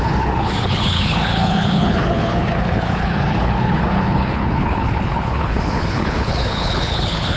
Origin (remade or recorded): remade